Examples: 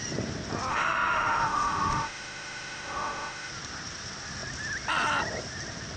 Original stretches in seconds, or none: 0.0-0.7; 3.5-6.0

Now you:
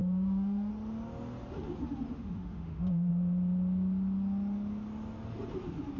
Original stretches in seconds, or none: 0.7-2.1; 3.1-6.0

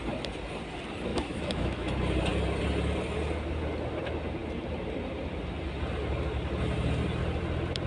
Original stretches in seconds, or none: 0.0-1.1; 1.9-7.9

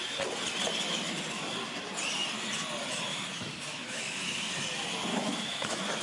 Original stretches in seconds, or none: 0.0-3.1; 4.5-5.1

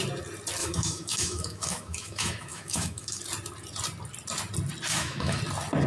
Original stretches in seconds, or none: 0.0-0.6; 3.2-4.9; 5.4-5.9

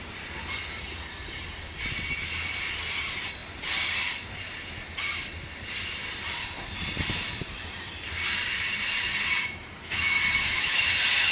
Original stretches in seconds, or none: 0.0-9.4; 10.9-11.3

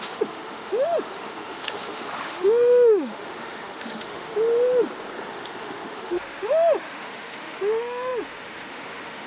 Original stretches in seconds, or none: 4.3-5.3

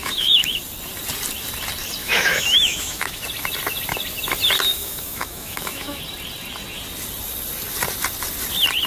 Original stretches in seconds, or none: 0.6-2.0; 3.2-4.7; 6.0-8.9